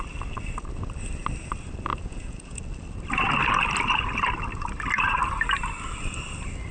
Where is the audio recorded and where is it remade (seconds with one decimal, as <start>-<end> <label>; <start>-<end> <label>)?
0.0-1.9 recorded; 1.9-2.6 remade; 2.6-6.7 recorded